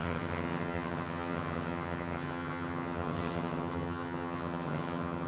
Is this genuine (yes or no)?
no